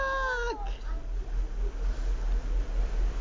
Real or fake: real